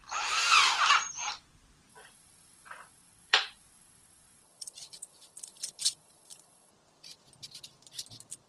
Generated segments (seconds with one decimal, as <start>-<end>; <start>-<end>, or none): 1.9-6.7